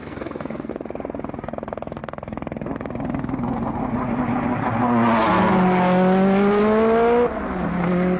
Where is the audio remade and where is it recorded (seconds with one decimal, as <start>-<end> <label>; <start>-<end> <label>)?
0.0-0.7 remade; 0.7-8.2 recorded